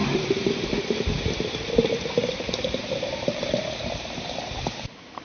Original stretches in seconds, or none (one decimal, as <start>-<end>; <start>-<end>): none